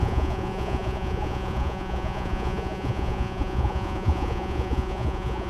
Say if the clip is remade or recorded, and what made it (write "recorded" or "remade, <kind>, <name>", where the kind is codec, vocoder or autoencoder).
remade, vocoder, Vocos